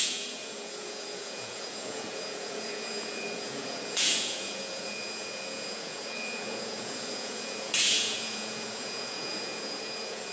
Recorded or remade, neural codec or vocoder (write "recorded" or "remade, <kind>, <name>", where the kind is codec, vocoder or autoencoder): remade, vocoder, Vocos